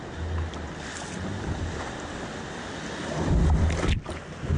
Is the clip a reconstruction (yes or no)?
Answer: no